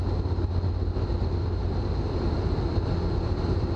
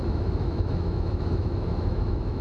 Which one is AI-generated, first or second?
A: second